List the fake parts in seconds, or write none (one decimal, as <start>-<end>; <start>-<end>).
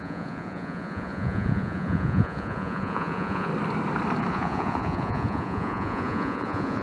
0.0-3.5; 4.3-6.8